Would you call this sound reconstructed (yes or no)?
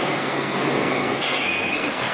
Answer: yes